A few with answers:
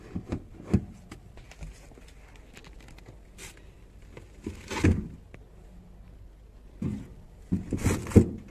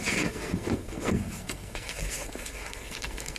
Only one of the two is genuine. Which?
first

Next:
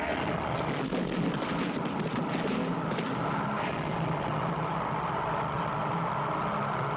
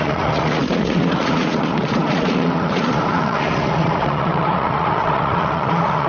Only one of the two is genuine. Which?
first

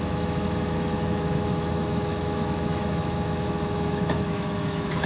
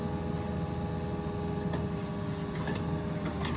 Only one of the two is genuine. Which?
second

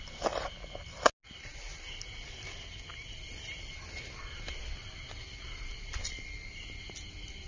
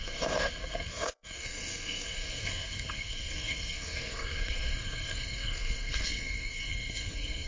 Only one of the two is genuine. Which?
first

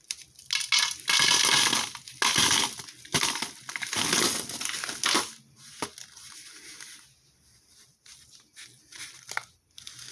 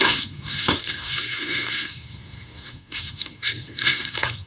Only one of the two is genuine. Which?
first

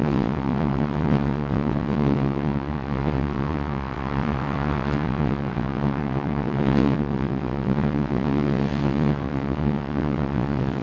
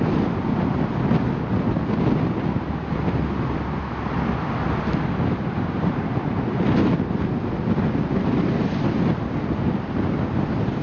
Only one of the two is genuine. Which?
second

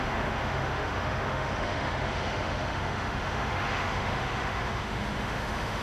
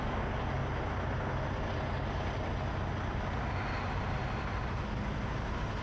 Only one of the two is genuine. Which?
second